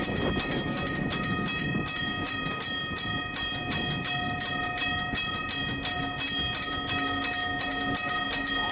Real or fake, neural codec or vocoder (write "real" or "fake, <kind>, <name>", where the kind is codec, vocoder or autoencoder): real